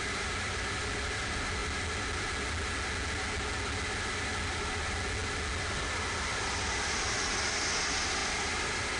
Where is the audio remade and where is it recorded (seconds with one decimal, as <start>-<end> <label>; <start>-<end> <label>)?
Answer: 0.0-9.0 recorded